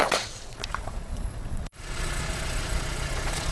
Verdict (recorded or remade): remade